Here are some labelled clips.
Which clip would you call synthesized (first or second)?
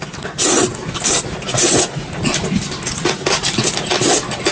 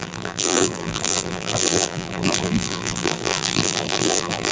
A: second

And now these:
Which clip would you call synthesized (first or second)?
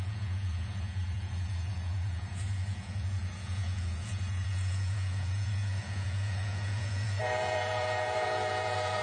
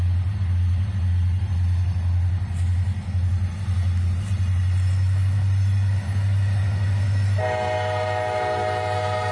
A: first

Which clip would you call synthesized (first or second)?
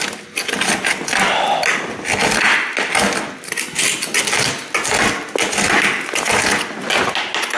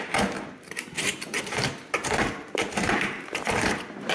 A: second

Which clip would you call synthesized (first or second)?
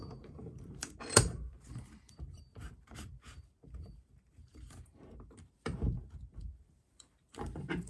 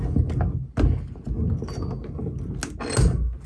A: first